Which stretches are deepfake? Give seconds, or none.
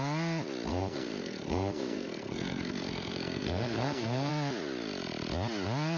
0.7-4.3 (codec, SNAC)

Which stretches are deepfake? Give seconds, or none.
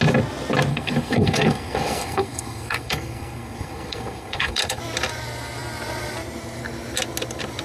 0.7-4.8 (codec, SNAC)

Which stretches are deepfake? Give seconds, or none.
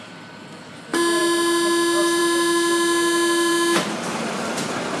none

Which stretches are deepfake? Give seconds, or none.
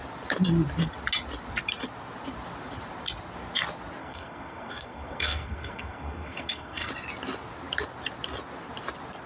4.0-6.9 (codec, SNAC)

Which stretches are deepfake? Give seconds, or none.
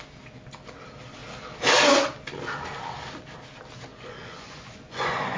3.9-5.4 (vocoder, Vocos)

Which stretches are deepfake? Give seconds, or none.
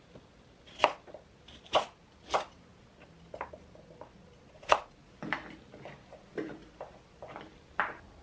none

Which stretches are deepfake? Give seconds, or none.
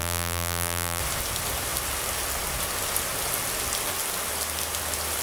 0.0-1.0 (vocoder, BigVGAN v2)